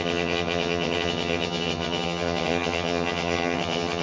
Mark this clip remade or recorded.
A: remade